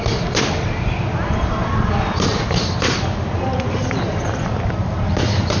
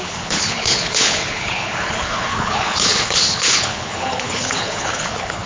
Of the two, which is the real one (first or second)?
first